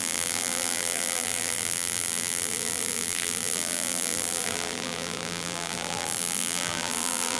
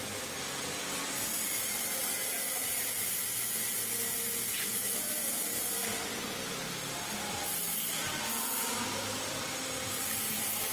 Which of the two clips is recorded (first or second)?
second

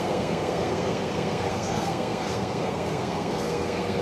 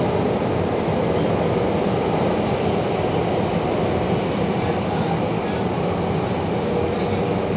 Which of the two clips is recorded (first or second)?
second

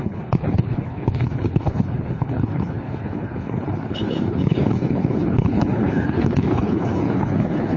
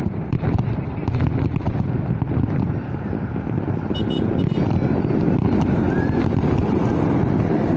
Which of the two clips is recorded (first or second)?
second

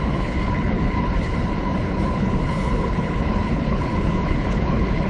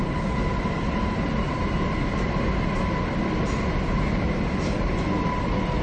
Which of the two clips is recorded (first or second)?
second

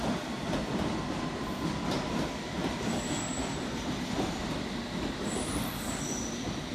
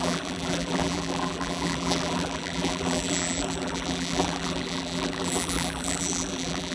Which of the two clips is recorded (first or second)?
first